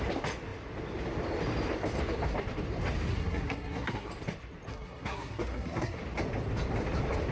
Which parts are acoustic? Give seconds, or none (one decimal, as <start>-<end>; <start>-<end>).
0.0-3.1; 4.1-4.7; 6.0-7.3